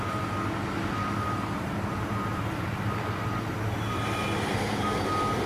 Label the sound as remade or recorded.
recorded